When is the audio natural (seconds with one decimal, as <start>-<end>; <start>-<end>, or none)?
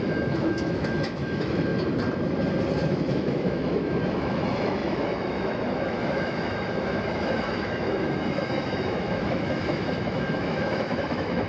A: 1.7-2.9